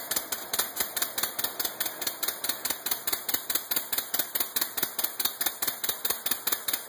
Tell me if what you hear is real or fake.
real